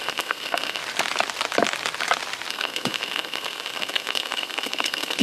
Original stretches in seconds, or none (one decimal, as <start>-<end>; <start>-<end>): 0.8-2.5